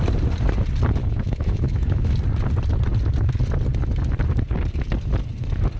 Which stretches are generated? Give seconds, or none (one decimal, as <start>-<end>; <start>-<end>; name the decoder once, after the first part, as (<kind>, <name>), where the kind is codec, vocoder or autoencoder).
1.0-2.1 (autoencoder, DAC-VAE)